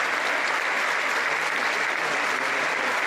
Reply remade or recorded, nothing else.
remade